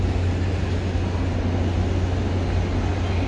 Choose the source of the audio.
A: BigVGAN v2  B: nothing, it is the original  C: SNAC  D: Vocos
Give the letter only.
B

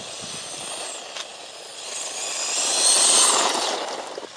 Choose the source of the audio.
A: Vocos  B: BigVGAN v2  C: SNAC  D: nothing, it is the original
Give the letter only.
D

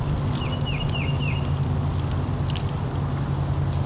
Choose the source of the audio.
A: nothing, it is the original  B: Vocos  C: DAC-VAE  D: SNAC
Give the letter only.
A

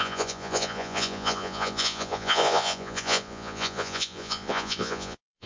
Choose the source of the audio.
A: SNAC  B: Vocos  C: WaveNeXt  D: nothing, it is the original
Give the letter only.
B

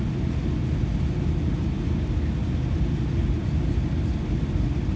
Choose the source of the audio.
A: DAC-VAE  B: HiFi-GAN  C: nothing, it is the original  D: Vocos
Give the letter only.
C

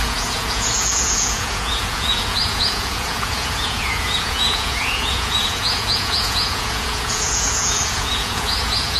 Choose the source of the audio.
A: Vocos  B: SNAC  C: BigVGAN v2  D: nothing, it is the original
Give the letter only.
A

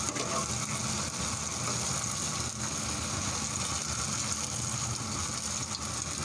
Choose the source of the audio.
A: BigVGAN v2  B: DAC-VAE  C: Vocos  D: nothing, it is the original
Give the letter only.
D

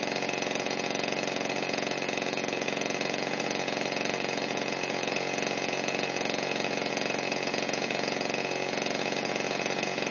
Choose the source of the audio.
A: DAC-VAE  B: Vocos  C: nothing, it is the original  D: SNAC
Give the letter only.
B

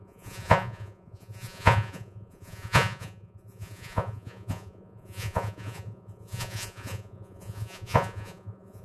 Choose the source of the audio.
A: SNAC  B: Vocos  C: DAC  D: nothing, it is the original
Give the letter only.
B